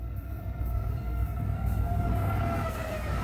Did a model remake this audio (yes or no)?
yes